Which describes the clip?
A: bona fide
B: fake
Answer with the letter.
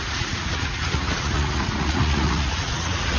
B